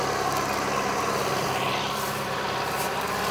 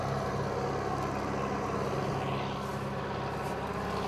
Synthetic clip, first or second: first